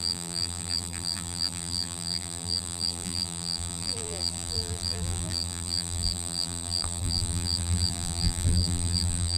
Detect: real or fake fake